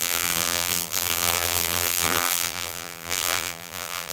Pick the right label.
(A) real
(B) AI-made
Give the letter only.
B